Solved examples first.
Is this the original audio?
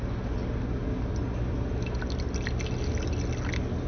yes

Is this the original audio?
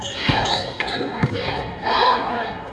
no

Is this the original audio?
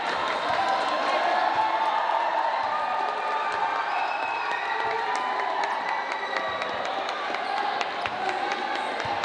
yes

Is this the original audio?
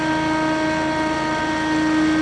yes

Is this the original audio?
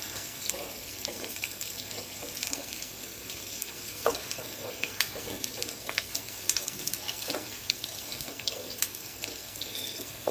no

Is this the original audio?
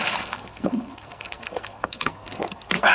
no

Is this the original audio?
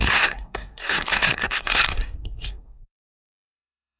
no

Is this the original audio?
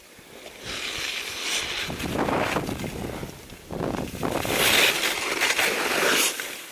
yes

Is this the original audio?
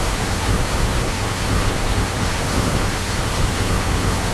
no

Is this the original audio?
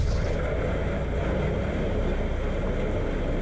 yes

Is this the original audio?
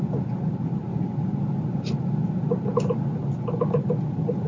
yes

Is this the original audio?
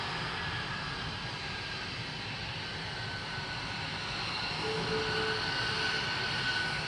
yes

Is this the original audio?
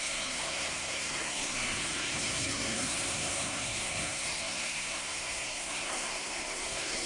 no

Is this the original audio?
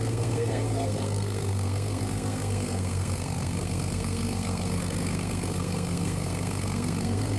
no